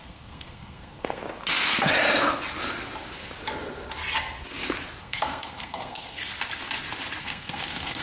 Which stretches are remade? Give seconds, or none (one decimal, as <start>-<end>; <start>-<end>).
0.0-1.2; 5.0-6.2; 7.2-8.0